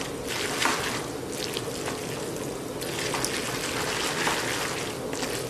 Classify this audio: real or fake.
real